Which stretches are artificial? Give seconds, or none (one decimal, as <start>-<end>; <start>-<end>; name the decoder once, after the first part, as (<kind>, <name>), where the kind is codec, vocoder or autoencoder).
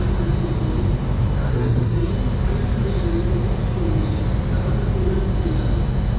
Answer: 1.5-2.1 (codec, SNAC)